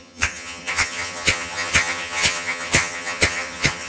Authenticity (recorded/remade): remade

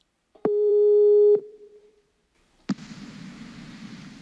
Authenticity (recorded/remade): remade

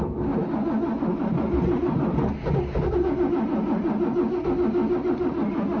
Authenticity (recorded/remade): recorded